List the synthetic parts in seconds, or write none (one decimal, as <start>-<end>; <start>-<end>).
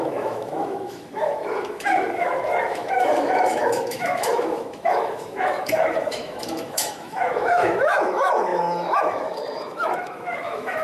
0.0-10.8